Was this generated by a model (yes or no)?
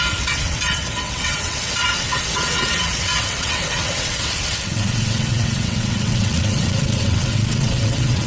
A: yes